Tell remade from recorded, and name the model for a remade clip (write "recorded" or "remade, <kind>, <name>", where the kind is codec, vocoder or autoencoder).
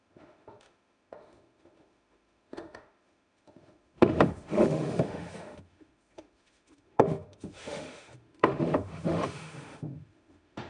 remade, autoencoder, DAC-VAE